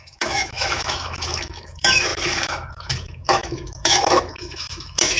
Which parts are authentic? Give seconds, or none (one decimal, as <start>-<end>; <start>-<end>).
none